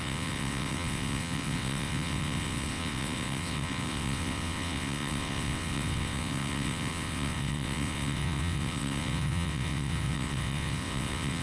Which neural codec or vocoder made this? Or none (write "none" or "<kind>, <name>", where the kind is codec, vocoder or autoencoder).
vocoder, WaveNeXt